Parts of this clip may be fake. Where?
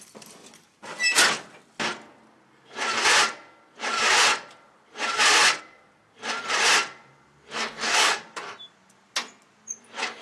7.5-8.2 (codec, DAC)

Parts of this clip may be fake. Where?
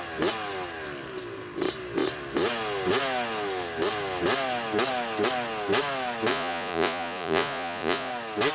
6.3-8.1 (vocoder, Vocos)